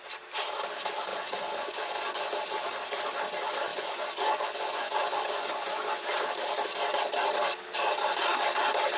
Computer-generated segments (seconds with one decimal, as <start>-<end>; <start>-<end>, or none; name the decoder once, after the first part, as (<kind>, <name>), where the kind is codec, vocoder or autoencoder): 1.1-2.3 (vocoder, Vocos); 3.7-6.2